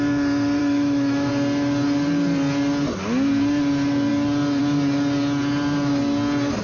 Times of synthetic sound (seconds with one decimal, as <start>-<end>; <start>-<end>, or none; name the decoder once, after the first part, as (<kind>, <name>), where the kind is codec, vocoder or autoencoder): 0.6-1.3 (autoencoder, DAC-VAE)